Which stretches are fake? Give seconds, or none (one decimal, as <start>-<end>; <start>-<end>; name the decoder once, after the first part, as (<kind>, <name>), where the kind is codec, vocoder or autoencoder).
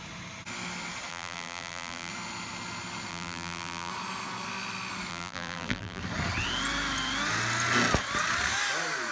1.1-2.1 (vocoder, BigVGAN v2); 3.1-3.9; 5.1-6.0